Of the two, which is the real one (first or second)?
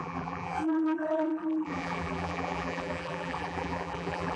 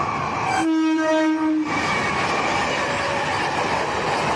second